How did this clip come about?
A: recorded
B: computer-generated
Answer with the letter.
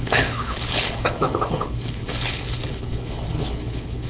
B